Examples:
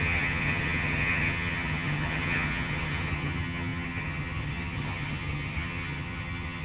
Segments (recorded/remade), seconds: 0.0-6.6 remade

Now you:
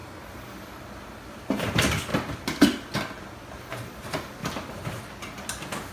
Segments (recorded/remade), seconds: 0.0-5.9 recorded